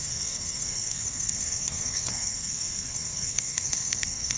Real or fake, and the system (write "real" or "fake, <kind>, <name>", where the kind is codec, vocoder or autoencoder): fake, codec, SNAC